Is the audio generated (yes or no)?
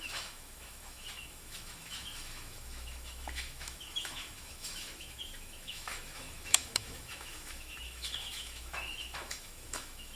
yes